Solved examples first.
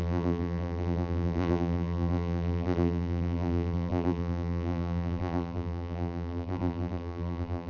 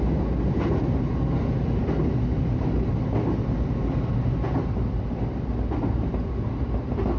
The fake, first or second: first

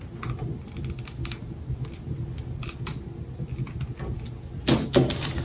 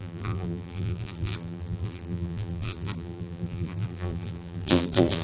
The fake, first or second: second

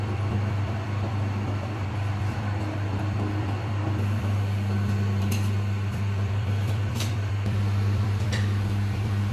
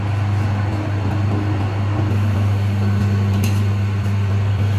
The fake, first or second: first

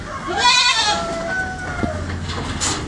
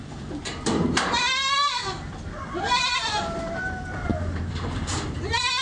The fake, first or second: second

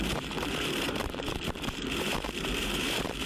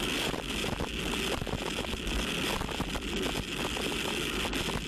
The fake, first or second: first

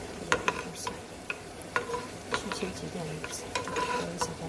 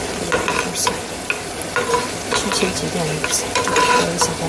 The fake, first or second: first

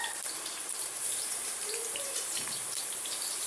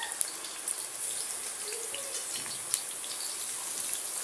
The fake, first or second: first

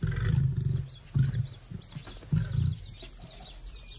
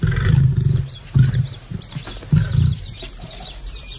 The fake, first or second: second